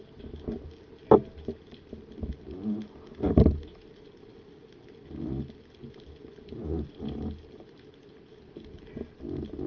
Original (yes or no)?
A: yes